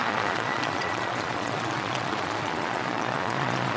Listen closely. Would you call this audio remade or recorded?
remade